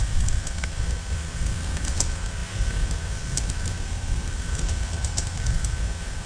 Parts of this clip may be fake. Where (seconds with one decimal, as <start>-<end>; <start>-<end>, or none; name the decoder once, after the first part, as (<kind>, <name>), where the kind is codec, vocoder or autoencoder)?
0.0-6.3 (codec, SNAC)